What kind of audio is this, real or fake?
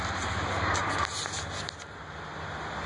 real